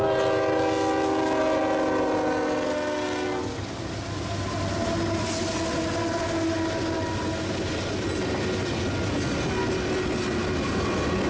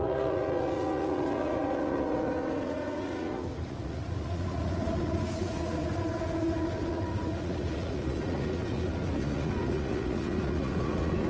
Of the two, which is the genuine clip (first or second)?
first